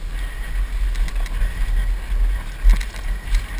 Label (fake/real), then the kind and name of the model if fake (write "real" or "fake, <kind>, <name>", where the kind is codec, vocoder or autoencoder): real